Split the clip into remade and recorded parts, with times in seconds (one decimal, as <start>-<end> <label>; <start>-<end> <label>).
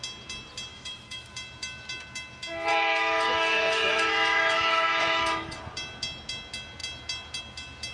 0.0-0.7 recorded; 0.7-1.3 remade; 1.3-2.7 recorded; 2.7-5.6 remade; 5.6-7.9 recorded